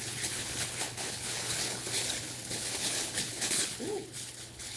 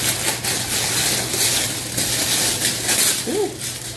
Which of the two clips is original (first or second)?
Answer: second